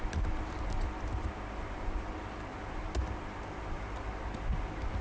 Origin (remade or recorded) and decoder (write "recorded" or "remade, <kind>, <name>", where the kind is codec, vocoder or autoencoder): recorded